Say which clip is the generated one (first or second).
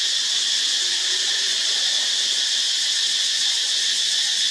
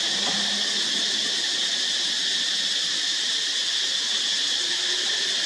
first